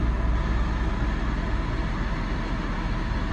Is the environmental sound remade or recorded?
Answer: recorded